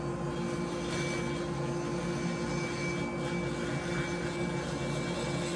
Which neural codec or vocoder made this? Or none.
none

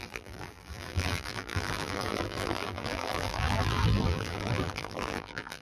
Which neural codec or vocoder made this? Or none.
vocoder, BigVGAN v2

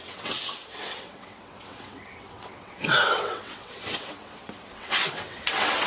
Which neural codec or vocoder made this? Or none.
vocoder, WaveNeXt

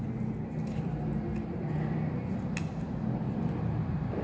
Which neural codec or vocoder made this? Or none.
none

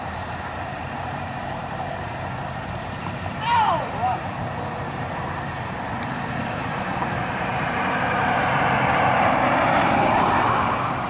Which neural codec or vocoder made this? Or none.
vocoder, BigVGAN v2